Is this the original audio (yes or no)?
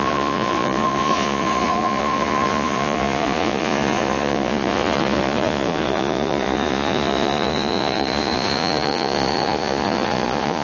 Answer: no